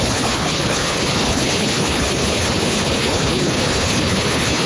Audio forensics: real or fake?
fake